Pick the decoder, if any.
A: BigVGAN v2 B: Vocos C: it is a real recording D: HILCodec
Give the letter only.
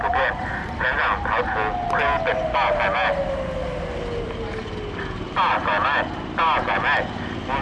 C